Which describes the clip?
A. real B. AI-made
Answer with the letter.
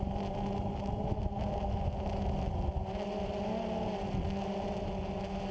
A